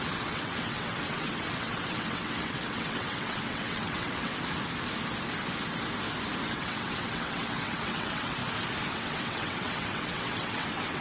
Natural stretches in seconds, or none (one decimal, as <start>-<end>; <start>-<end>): 4.3-6.4; 8.4-8.9